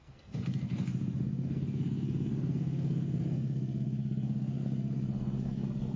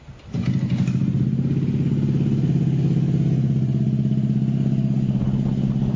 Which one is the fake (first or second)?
first